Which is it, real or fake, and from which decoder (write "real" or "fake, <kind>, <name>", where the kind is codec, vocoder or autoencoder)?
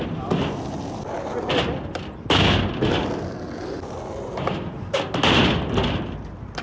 real